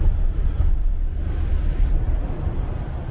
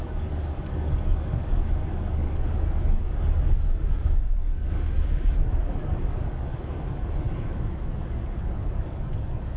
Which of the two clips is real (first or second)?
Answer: first